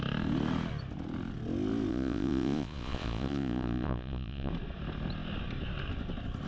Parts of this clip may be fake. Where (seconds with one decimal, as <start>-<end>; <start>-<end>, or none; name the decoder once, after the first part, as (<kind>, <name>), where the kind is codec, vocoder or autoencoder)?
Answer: 1.9-4.5 (vocoder, Vocos)